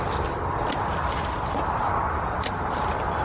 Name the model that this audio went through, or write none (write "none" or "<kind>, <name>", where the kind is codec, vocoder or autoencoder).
none